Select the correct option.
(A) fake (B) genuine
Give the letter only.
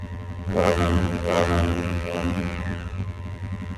A